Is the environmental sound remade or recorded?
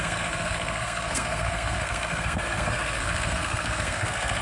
remade